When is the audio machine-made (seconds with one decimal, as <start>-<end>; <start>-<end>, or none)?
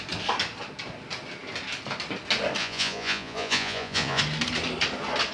2.6-4.2